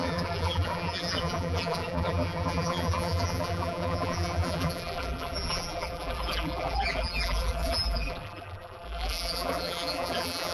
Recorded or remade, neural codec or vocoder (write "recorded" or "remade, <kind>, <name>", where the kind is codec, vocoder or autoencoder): remade, vocoder, BigVGAN v2